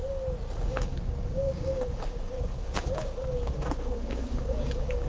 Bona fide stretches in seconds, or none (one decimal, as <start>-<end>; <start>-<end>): 0.0-0.5